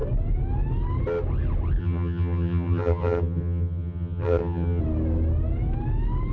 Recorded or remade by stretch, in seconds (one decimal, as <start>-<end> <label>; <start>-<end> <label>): 0.0-1.8 recorded; 1.8-4.8 remade; 4.8-6.3 recorded